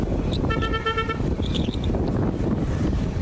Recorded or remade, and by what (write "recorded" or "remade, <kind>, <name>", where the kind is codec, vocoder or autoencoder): remade, vocoder, BigVGAN v2